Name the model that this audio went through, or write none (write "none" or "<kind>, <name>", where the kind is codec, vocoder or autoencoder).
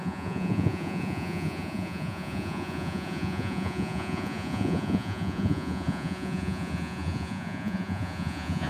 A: vocoder, Vocos